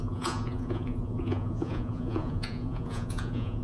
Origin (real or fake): fake